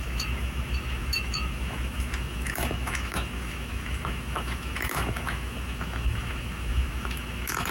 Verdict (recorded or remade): remade